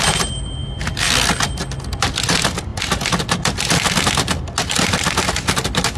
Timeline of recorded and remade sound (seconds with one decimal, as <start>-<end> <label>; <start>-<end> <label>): 0.0-6.0 recorded